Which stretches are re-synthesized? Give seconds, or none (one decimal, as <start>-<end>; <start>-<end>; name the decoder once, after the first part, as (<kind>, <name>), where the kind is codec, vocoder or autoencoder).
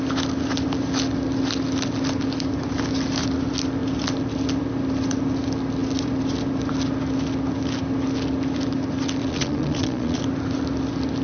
9.2-10.2 (vocoder, Vocos)